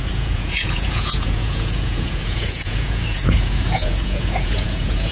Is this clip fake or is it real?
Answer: fake